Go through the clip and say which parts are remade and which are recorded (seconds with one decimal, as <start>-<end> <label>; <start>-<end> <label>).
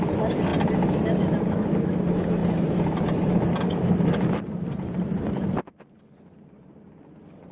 0.0-2.4 recorded; 2.4-6.9 remade; 6.9-7.5 recorded